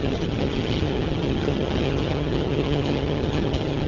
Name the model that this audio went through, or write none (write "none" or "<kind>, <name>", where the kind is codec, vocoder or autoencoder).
vocoder, HiFi-GAN